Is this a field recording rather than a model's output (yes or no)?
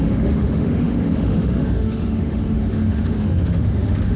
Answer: no